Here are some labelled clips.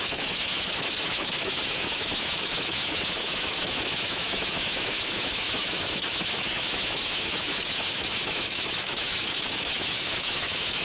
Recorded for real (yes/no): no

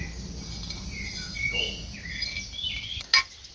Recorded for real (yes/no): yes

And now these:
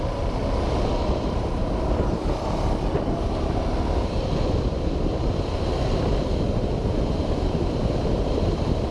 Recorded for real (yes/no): yes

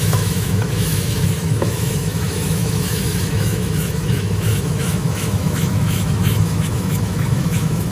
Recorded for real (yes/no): no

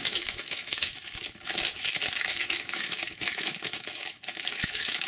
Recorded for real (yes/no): no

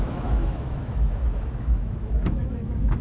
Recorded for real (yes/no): no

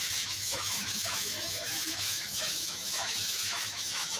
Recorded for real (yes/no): no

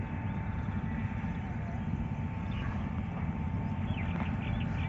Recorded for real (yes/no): yes